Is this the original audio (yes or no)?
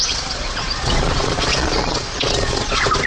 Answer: no